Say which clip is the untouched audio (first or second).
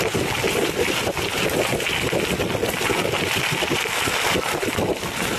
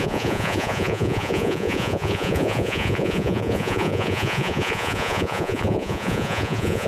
first